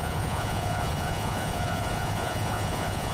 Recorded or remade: remade